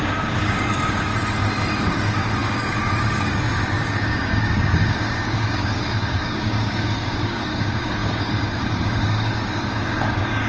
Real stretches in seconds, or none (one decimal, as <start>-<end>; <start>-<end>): 1.1-1.8